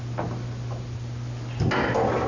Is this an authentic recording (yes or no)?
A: yes